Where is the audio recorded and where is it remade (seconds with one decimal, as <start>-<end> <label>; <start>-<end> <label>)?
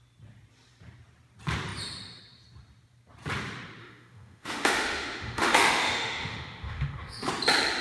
0.0-3.8 recorded; 3.8-7.3 remade; 7.3-7.8 recorded